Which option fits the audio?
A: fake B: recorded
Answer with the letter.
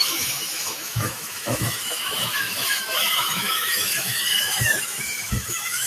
A